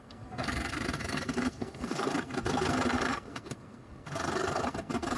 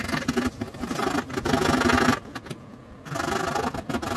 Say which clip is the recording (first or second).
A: second